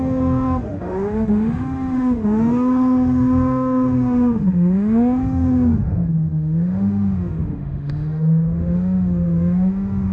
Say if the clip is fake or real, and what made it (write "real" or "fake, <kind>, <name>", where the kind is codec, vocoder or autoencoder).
fake, autoencoder, DAC-VAE